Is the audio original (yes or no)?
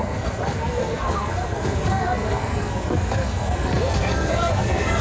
no